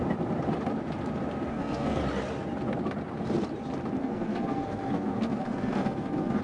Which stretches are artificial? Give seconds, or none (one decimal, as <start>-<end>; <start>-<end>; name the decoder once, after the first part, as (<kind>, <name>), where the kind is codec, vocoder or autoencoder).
1.5-2.0 (codec, SNAC); 4.0-6.4

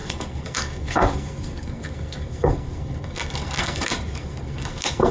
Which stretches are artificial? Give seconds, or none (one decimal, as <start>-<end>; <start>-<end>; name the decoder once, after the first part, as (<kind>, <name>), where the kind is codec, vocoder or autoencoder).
0.0-5.1 (codec, SNAC)

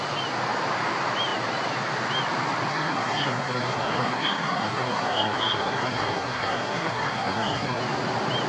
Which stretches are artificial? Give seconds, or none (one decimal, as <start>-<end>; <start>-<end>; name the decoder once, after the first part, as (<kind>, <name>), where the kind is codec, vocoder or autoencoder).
2.7-7.8 (codec, SNAC)